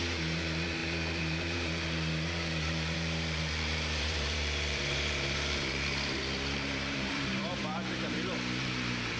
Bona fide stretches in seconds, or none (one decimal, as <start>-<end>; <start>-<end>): none